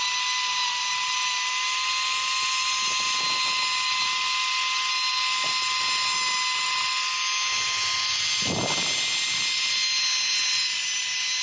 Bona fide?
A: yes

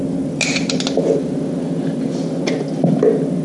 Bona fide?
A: yes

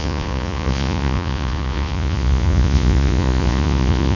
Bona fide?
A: no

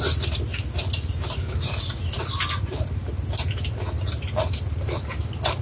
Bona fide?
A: yes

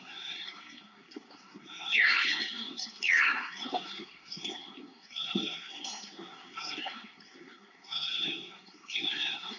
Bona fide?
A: no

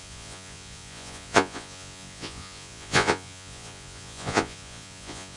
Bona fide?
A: no